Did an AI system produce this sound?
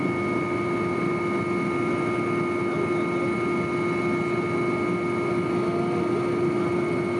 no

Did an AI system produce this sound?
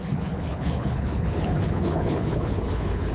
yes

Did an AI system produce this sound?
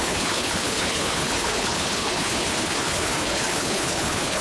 yes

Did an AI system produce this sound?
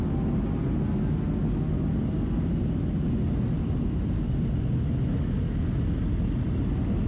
no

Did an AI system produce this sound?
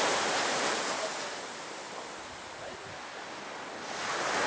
no